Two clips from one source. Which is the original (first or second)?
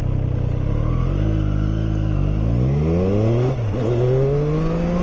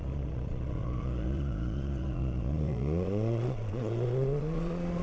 first